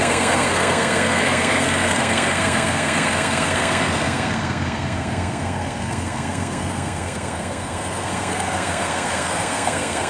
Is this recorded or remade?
remade